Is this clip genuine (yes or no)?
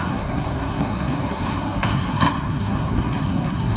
no